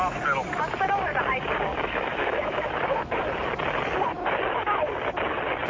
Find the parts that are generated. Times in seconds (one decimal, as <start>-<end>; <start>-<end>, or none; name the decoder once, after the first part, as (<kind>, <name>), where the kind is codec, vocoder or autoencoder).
1.7-3.2 (autoencoder, DAC-VAE)